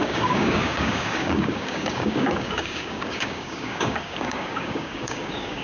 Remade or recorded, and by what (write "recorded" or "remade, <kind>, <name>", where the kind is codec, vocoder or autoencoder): remade, codec, DAC